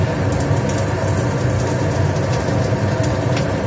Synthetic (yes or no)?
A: no